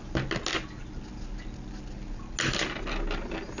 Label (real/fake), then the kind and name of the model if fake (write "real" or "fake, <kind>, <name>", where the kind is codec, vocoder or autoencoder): real